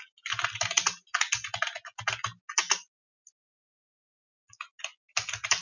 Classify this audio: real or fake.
real